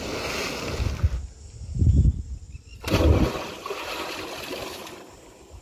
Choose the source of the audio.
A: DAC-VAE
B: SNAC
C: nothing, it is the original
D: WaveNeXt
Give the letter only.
C